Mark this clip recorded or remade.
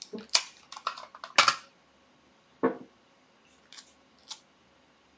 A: recorded